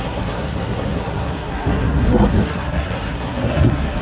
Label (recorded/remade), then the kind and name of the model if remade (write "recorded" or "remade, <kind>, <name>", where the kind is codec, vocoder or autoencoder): remade, codec, SNAC